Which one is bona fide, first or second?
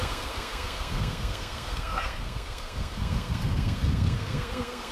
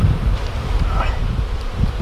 second